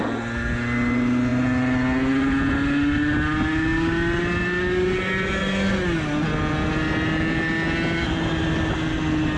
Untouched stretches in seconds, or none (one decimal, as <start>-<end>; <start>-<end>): 0.0-9.4